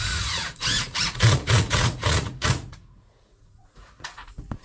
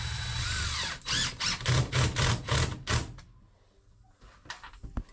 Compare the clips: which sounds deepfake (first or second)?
first